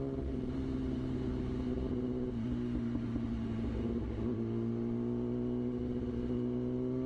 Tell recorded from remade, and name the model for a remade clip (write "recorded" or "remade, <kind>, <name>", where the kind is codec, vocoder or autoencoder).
recorded